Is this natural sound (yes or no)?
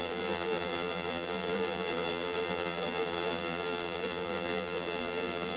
no